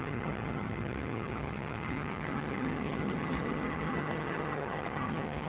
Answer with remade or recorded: remade